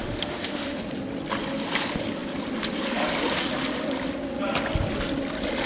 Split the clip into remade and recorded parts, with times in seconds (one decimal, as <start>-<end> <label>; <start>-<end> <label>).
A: 0.0-0.8 remade; 0.8-5.7 recorded